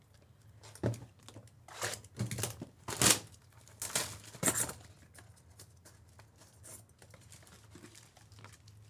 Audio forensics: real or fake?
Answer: real